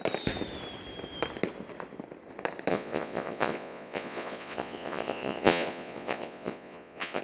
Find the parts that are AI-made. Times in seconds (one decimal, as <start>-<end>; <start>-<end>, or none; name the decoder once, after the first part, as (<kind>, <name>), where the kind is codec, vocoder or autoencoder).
2.7-7.2 (vocoder, Vocos)

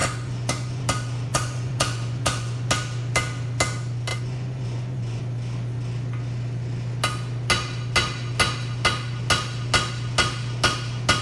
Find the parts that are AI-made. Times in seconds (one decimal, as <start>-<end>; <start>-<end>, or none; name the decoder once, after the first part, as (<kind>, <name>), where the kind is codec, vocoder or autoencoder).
0.0-0.8 (vocoder, Vocos); 1.3-2.7; 4.1-5.2

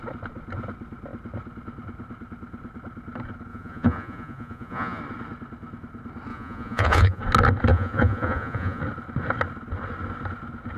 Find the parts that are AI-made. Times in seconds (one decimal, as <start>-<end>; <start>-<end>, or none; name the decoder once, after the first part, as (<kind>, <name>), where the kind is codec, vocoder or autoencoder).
3.5-5.0 (vocoder, Vocos); 6.3-7.2; 7.7-8.8

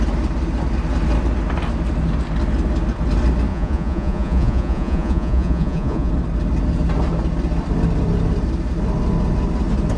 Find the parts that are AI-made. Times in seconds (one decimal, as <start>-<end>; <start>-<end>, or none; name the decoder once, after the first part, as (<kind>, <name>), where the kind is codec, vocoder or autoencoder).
3.5-6.1 (vocoder, Vocos)